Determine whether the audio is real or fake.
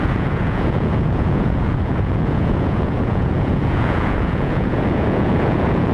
fake